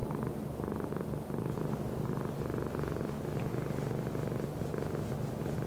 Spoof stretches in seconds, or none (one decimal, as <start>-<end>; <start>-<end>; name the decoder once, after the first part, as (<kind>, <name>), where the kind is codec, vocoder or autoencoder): 0.0-3.4 (vocoder, BigVGAN v2)